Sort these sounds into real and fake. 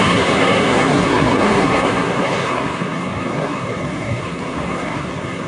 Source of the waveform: fake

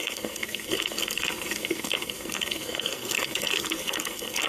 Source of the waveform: fake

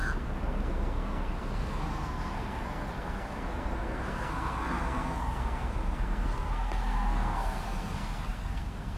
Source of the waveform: fake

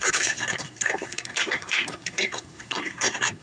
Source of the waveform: fake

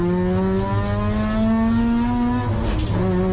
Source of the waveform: real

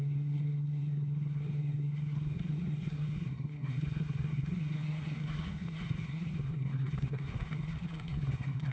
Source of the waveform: fake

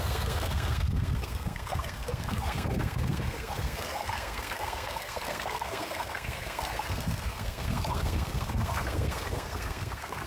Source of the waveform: fake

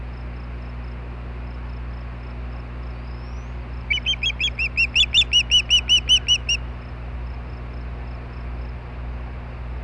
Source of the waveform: real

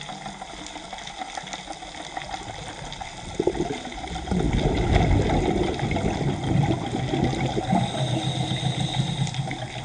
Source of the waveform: real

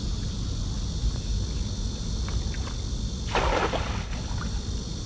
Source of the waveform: real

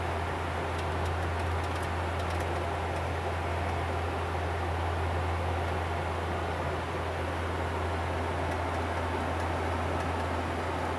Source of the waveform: real